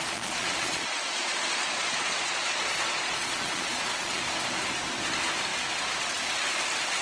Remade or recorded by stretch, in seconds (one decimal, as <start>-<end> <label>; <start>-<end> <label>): 0.0-4.2 remade; 4.2-7.0 recorded